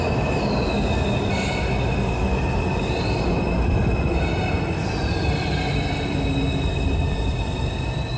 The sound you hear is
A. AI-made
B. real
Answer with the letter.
B